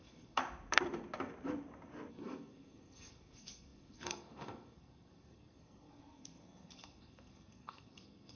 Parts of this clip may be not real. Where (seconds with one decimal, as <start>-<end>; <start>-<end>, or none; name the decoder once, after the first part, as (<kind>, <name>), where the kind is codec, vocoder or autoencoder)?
0.0-0.4 (codec, SNAC); 2.1-8.4